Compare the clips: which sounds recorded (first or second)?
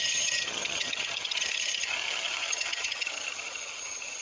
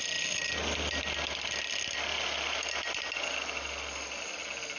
second